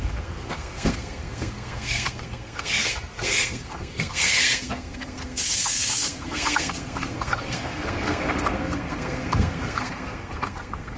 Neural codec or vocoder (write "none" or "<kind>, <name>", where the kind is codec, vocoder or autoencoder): codec, SNAC